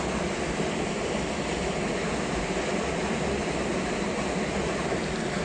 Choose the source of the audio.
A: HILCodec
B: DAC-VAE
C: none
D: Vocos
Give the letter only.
C